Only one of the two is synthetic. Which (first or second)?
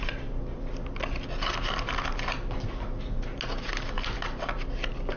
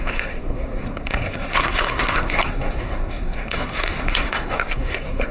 second